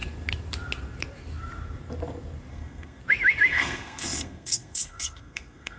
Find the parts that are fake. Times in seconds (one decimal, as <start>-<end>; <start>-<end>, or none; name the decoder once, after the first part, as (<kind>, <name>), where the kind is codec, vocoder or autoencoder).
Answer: 2.5-3.0 (codec, SNAC); 3.5-5.8